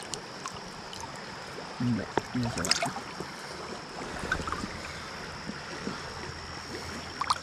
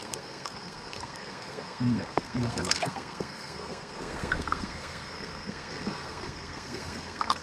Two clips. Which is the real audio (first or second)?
first